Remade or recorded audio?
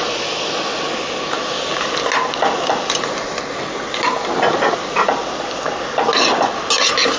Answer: recorded